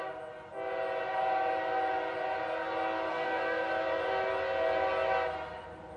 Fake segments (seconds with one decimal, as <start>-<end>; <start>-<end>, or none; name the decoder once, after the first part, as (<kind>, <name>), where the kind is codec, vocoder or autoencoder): 3.1-3.7 (codec, SNAC)